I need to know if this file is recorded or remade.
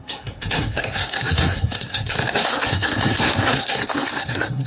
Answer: remade